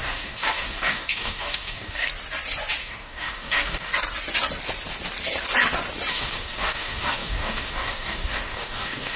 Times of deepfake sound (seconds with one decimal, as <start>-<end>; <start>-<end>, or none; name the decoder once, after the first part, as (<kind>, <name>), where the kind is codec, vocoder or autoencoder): 0.0-2.1 (codec, DAC); 2.8-3.9; 6.1-9.2